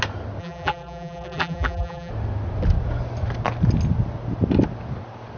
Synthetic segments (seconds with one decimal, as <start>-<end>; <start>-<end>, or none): 0.4-2.1